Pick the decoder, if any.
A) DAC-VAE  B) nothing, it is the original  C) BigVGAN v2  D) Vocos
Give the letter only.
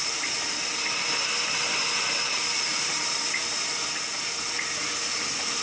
B